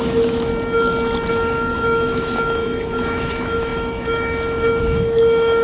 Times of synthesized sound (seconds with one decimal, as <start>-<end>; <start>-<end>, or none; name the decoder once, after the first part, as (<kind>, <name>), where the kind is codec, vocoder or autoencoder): 0.0-0.5 (autoencoder, DAC-VAE); 1.3-5.6